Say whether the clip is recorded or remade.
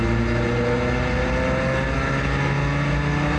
recorded